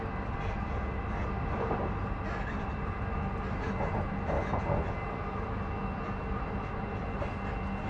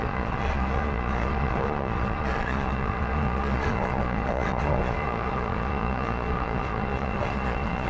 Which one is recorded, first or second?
first